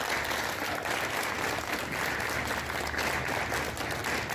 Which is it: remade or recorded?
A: recorded